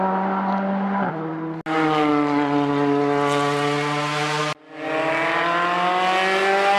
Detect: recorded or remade recorded